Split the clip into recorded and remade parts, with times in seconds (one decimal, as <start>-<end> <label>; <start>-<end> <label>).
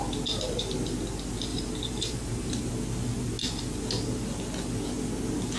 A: 0.0-1.5 recorded; 1.5-2.7 remade; 2.7-5.6 recorded